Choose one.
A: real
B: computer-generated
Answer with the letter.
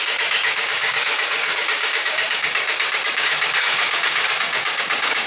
B